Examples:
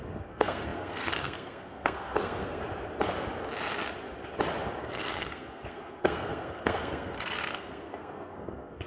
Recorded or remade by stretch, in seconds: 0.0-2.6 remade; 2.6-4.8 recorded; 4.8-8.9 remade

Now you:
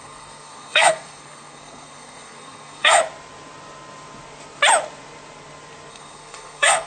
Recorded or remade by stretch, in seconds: 0.0-3.0 remade; 3.0-5.9 recorded; 5.9-6.9 remade

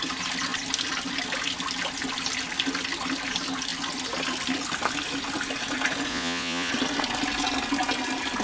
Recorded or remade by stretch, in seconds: 0.0-6.1 recorded; 6.1-6.7 remade; 6.7-8.4 recorded

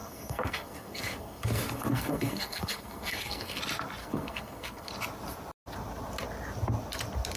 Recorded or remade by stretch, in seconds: 0.0-3.6 remade; 3.6-4.0 recorded; 4.0-4.9 remade; 4.9-7.4 recorded

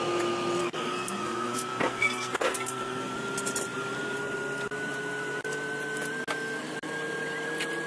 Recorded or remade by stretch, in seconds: 0.0-0.6 recorded; 0.6-3.0 remade; 3.0-7.9 recorded

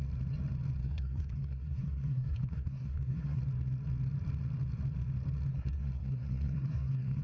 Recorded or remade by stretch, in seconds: 0.0-0.8 recorded; 0.8-3.4 remade; 3.4-5.5 recorded; 5.5-7.2 remade

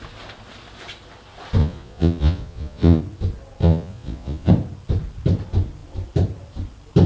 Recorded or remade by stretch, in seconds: 0.0-1.6 recorded; 1.6-3.0 remade; 3.0-3.6 recorded; 3.6-4.5 remade; 4.5-7.1 recorded